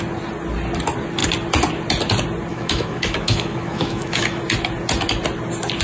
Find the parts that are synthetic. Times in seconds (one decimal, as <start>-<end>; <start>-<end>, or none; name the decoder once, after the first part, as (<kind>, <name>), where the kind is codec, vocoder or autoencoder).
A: 2.5-4.4 (autoencoder, DAC-VAE)